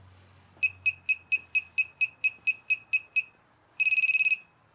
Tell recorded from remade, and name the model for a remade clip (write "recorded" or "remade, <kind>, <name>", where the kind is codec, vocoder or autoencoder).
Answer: recorded